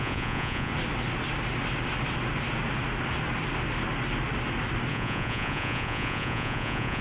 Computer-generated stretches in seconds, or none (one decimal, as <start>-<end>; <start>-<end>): 0.0-0.7; 4.9-7.0